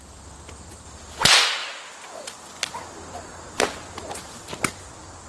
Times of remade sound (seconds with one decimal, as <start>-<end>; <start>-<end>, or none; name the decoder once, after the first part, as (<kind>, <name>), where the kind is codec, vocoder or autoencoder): none

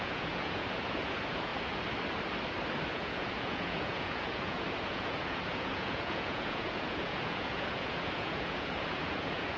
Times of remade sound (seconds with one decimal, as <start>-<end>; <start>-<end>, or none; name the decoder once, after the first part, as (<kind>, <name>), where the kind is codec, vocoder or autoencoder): 0.0-1.5 (vocoder, Vocos); 2.9-9.6

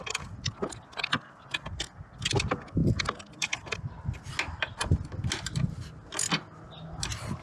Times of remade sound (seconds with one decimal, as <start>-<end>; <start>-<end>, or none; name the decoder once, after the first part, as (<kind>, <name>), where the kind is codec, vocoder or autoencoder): none

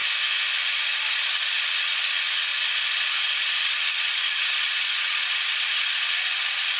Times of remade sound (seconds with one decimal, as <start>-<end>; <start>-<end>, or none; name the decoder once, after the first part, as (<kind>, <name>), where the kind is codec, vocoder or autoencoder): 0.7-6.8 (vocoder, Vocos)

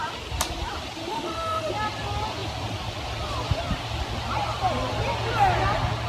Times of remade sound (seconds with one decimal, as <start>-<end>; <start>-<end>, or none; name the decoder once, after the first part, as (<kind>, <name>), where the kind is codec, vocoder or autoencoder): 1.1-1.7 (autoencoder, DAC-VAE)

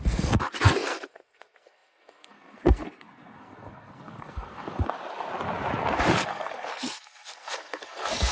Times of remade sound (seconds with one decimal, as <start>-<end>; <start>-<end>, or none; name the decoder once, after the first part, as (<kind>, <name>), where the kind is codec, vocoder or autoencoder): 0.0-5.0 (codec, SNAC); 6.1-8.3